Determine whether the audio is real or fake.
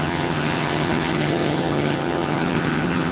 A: fake